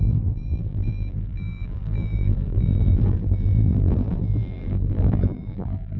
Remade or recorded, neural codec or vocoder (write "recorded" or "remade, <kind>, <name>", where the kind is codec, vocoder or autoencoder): remade, vocoder, BigVGAN v2